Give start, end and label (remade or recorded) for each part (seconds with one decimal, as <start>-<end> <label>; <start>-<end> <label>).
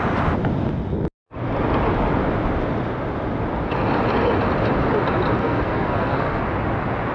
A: 0.0-5.4 recorded; 5.4-6.4 remade; 6.4-7.1 recorded